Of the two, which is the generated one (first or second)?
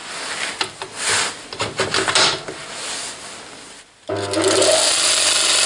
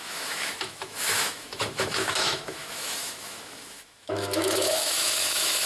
second